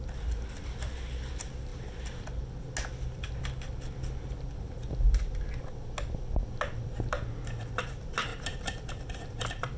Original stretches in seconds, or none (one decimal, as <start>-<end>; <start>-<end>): 0.0-9.8